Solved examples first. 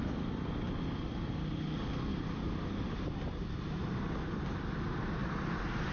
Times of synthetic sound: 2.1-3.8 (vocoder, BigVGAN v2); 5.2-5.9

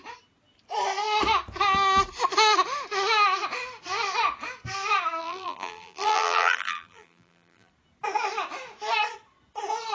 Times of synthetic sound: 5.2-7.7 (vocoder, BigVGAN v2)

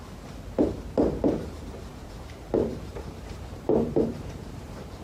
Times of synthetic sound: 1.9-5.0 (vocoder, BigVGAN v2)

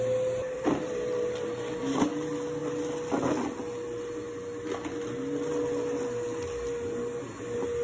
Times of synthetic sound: 0.4-2.0 (vocoder, BigVGAN v2)

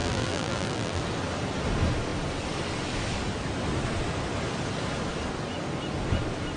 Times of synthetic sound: 0.0-1.0 (vocoder, BigVGAN v2)

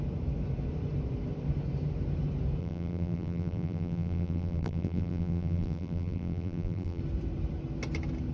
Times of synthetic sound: 2.6-7.0 (vocoder, BigVGAN v2)

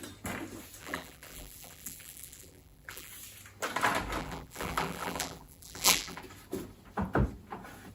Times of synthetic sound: 0.8-3.1 (vocoder, BigVGAN v2); 4.2-6.2